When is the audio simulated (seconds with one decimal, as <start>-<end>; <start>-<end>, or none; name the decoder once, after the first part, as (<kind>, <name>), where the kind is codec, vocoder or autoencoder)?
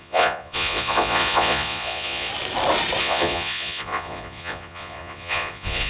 0.0-2.3 (vocoder, Vocos); 3.0-5.9